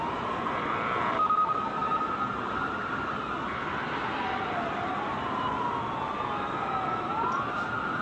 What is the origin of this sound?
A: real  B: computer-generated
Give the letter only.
A